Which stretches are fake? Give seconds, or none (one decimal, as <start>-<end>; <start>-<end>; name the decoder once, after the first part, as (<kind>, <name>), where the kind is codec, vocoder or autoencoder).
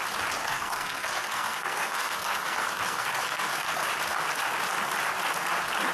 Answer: 0.4-3.9 (codec, SNAC)